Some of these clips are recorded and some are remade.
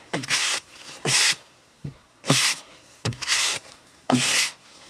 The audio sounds remade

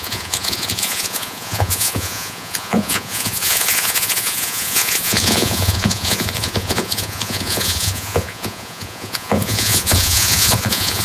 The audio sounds remade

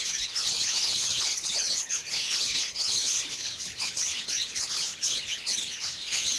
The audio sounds remade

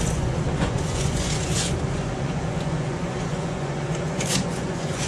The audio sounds remade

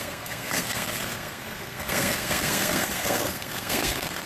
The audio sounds remade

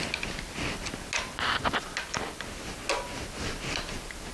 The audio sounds recorded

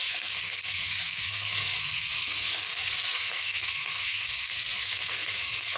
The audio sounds remade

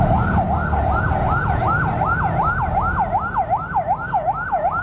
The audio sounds recorded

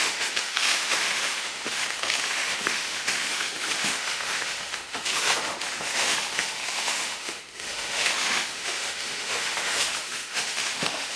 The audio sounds remade